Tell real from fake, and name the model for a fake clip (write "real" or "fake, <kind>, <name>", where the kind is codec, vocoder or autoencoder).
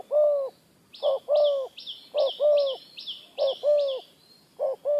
real